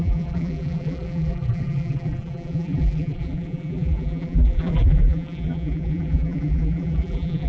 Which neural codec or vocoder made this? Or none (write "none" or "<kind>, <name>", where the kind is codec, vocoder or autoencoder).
vocoder, BigVGAN v2